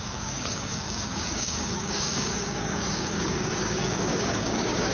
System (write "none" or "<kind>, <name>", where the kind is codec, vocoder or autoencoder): codec, DAC